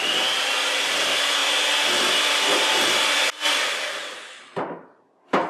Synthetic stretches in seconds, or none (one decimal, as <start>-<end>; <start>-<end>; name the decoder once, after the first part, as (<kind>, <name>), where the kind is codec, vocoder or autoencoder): none